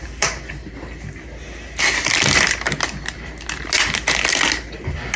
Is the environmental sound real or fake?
real